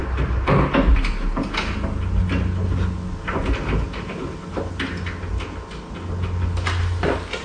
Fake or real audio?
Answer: real